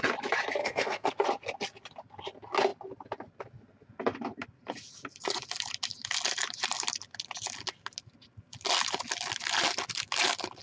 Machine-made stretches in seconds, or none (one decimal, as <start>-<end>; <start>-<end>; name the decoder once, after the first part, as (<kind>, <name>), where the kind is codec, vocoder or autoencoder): 0.6-1.1 (codec, SNAC)